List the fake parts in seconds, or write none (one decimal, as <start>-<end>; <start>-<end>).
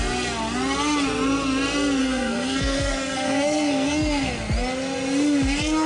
2.0-4.3